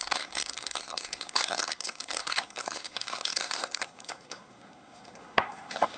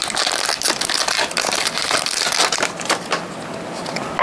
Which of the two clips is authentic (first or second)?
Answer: second